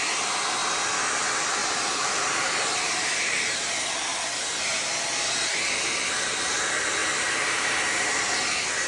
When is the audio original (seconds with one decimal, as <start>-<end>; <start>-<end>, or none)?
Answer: 0.0-1.6; 3.8-7.0; 8.2-8.9